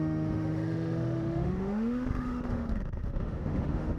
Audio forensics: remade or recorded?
remade